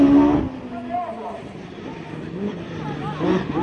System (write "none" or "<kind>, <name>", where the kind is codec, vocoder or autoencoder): none